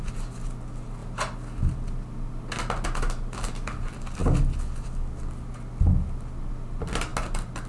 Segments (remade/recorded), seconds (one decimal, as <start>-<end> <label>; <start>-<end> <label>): 0.0-7.7 recorded